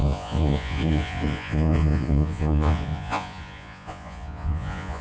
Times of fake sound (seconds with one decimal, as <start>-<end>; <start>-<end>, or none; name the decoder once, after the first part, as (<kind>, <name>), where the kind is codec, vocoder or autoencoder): 0.0-5.0 (vocoder, Vocos)